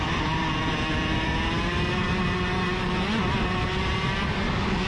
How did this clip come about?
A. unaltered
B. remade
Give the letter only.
A